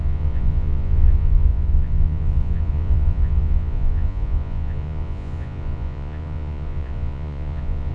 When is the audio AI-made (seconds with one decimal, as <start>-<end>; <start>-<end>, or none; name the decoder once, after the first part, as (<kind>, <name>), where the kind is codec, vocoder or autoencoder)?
0.0-7.9 (vocoder, Vocos)